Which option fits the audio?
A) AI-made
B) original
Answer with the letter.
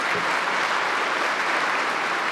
B